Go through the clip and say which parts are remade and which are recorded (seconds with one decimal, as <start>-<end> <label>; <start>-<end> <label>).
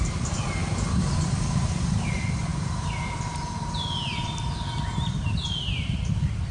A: 0.0-6.5 recorded